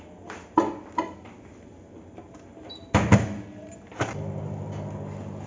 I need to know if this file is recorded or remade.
recorded